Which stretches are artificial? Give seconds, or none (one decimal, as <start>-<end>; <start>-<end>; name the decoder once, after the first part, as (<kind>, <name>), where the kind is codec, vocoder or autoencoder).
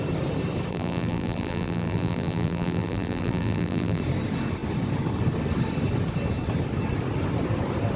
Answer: 0.7-4.0 (vocoder, BigVGAN v2)